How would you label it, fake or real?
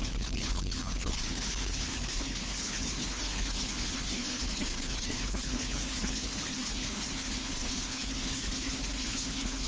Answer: fake